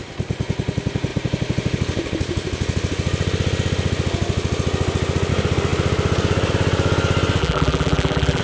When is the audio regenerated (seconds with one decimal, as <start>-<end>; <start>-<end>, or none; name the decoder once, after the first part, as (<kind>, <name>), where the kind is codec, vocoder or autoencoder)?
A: 7.4-8.4 (vocoder, BigVGAN v2)